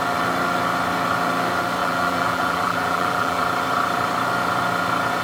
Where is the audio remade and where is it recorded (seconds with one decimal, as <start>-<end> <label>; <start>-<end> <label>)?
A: 0.0-1.8 recorded; 1.8-3.4 remade; 3.4-5.2 recorded